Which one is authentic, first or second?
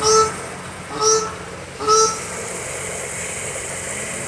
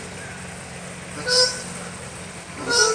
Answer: first